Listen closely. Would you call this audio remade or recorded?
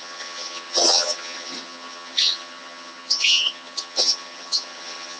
remade